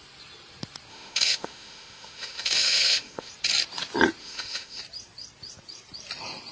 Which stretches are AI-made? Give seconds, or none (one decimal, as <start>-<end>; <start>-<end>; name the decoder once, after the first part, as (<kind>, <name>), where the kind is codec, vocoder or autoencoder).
0.9-3.3 (autoencoder, DAC-VAE); 4.2-4.8